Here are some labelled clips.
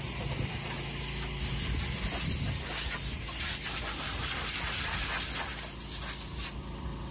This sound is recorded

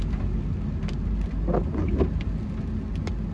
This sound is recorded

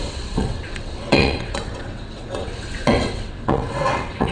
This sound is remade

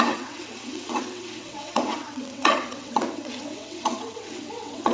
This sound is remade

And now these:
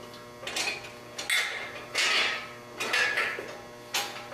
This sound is recorded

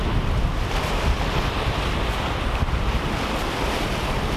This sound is remade